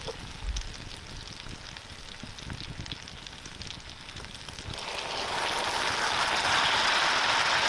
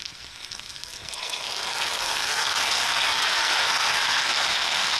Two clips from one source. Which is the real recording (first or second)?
first